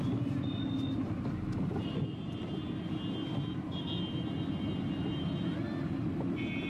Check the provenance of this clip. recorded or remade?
recorded